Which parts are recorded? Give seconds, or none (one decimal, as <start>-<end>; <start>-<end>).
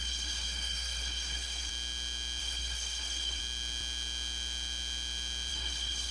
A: 1.7-2.4; 3.4-5.5